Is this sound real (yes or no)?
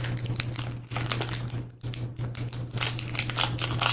yes